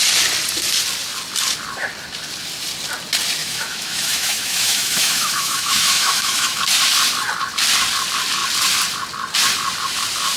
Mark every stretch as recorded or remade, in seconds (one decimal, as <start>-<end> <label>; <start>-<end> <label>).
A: 0.0-3.4 recorded; 3.4-6.6 remade; 6.6-10.4 recorded